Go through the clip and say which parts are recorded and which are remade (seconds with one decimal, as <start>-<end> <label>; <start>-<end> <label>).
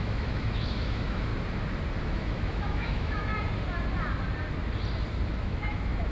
0.0-1.3 remade; 1.3-2.0 recorded; 2.0-3.3 remade; 3.3-5.3 recorded; 5.3-6.1 remade